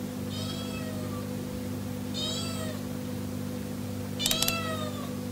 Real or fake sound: real